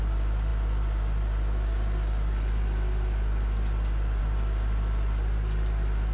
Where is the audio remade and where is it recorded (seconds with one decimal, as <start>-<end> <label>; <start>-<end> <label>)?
0.0-6.1 recorded